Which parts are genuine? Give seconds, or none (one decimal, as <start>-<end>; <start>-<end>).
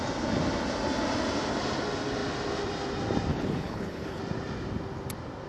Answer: 0.0-3.3; 4.2-5.5